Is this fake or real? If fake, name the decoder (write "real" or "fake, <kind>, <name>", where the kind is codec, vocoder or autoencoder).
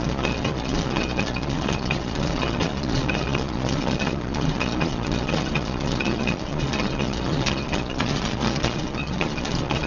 fake, vocoder, Vocos